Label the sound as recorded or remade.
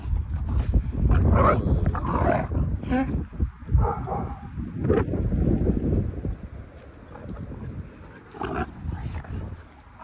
recorded